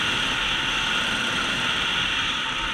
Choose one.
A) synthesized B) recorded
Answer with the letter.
B